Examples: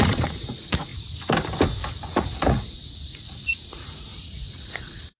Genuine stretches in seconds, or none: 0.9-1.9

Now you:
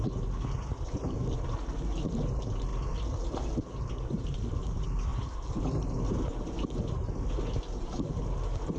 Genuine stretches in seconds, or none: 0.0-8.8

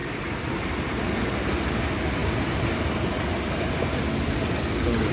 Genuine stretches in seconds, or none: 0.0-5.1

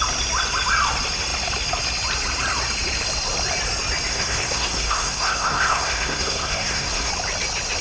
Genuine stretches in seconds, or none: 0.0-4.1; 7.1-7.8